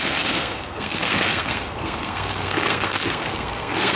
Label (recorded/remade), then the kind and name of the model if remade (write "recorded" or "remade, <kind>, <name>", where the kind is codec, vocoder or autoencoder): remade, codec, SNAC